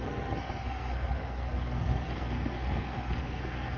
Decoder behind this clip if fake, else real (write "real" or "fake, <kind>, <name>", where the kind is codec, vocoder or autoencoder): fake, codec, SNAC